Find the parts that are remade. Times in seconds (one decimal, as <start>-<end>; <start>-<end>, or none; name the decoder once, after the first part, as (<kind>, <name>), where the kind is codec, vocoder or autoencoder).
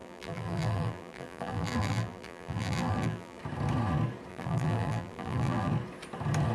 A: 0.0-3.4 (vocoder, BigVGAN v2); 4.3-5.7